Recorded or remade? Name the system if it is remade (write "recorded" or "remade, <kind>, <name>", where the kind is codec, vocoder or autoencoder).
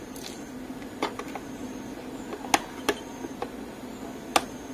recorded